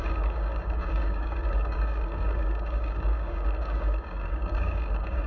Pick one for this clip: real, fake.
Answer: fake